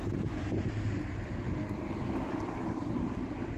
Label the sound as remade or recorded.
recorded